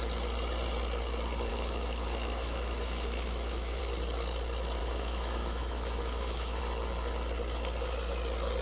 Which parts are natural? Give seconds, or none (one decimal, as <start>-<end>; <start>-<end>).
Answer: 0.0-1.5; 3.8-4.8; 6.6-8.6